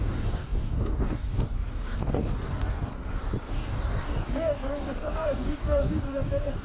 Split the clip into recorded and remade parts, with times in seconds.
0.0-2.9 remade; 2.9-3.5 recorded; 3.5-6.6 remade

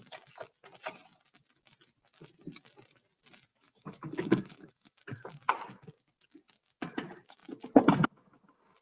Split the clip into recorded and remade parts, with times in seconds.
0.0-3.5 recorded; 3.5-5.0 remade; 5.0-8.8 recorded

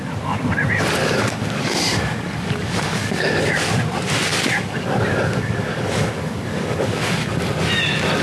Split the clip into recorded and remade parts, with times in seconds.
0.0-1.0 recorded; 1.0-3.4 remade; 3.4-4.3 recorded; 4.3-7.5 remade; 7.5-8.2 recorded

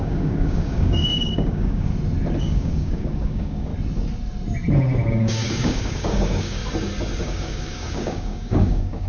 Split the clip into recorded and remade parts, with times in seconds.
0.0-1.9 remade; 1.9-2.4 recorded; 2.4-3.7 remade; 3.7-5.1 recorded; 5.1-6.6 remade; 6.6-7.2 recorded; 7.2-9.1 remade

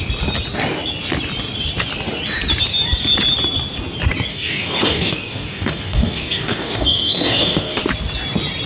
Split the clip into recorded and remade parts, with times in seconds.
0.0-4.3 recorded; 4.3-7.8 remade; 7.8-8.7 recorded

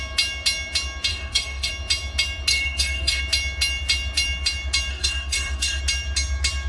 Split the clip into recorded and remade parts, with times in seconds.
0.0-1.1 recorded; 1.1-1.7 remade; 1.7-2.5 recorded; 2.5-3.2 remade; 3.2-4.9 recorded; 4.9-5.8 remade; 5.8-6.7 recorded

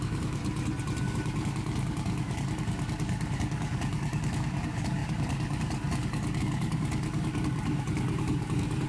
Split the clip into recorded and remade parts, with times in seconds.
0.0-0.4 remade; 0.4-1.0 recorded; 1.0-8.9 remade

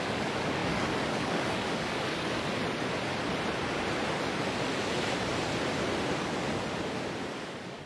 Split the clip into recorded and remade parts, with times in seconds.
0.0-2.6 remade; 2.6-7.3 recorded; 7.3-7.9 remade